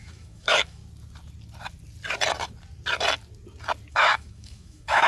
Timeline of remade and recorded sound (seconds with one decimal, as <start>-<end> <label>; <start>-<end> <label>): 0.0-0.8 remade; 0.8-3.9 recorded; 3.9-5.1 remade